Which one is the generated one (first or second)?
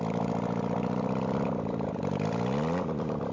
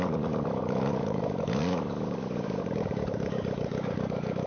second